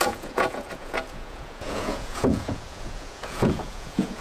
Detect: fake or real fake